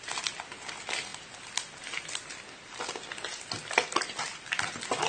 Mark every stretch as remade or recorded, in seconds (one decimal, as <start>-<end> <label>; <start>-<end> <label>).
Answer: 0.0-5.1 recorded